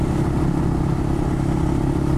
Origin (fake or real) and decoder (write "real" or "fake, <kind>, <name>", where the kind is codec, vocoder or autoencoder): real